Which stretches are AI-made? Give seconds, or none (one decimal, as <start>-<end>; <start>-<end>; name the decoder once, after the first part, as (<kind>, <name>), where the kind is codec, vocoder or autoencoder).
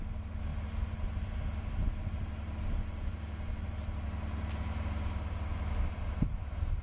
none